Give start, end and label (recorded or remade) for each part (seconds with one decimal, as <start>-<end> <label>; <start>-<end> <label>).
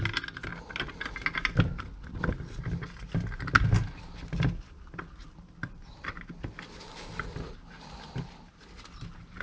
0.0-9.4 recorded